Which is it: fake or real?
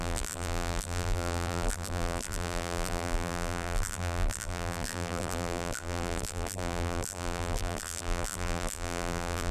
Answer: fake